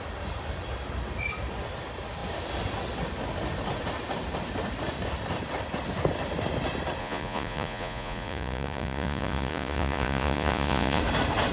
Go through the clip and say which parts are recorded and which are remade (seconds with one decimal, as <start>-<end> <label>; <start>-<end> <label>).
0.0-7.0 recorded; 7.0-11.0 remade; 11.0-11.5 recorded